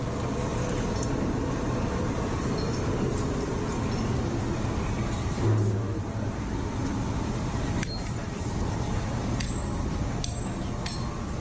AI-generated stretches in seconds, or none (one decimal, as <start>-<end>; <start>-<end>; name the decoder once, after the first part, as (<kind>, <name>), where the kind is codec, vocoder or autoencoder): none